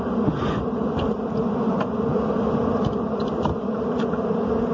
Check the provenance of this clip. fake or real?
real